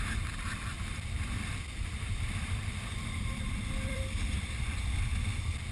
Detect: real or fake fake